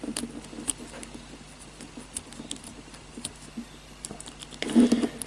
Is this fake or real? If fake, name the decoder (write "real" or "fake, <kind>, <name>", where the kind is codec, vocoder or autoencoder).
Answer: real